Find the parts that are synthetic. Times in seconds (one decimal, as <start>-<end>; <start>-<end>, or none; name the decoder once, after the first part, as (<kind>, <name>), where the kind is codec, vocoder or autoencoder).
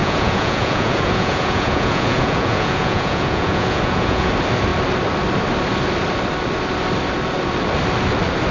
0.0-4.3 (vocoder, Vocos)